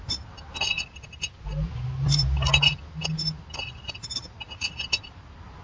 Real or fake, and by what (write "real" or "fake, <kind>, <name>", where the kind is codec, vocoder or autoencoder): real